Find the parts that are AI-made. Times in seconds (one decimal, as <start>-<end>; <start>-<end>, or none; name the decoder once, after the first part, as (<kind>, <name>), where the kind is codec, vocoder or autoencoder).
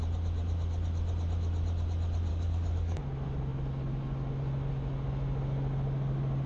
2.3-3.0 (codec, DAC)